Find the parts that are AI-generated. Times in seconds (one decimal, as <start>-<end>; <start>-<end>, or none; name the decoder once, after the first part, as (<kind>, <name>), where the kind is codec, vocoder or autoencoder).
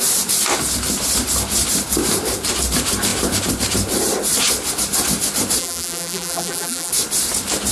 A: 5.6-6.9 (vocoder, BigVGAN v2)